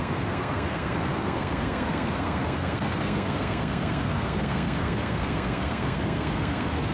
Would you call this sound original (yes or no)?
no